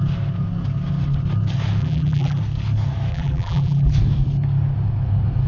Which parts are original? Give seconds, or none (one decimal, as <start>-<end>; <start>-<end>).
0.0-1.8; 2.4-3.1; 3.9-5.5